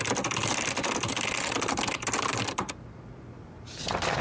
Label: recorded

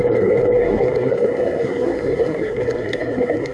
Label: remade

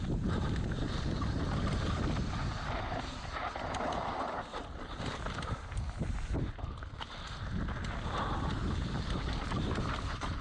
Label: recorded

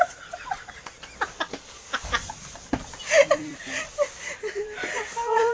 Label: remade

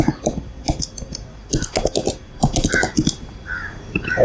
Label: recorded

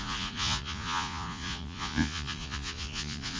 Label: remade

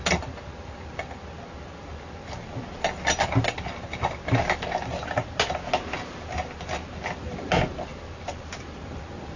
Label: recorded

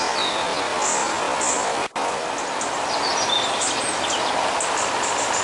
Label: recorded